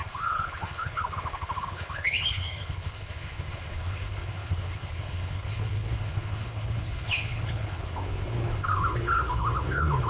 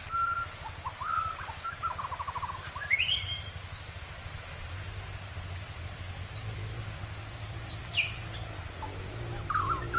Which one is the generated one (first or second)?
first